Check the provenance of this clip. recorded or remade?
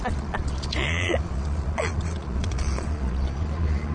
remade